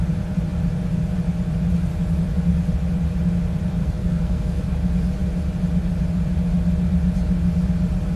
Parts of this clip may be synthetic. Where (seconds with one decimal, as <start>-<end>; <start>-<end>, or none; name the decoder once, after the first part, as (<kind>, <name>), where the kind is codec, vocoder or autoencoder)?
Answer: 3.8-4.6 (codec, SNAC)